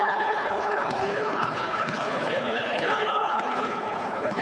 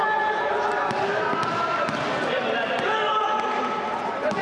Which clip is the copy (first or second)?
first